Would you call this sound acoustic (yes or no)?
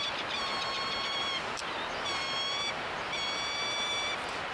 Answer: yes